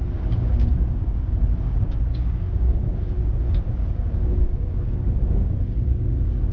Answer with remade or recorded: remade